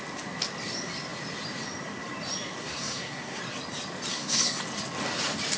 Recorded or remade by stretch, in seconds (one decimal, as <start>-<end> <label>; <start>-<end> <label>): 0.0-2.6 recorded; 2.6-3.4 remade; 3.4-4.1 recorded; 4.1-4.6 remade; 4.6-5.6 recorded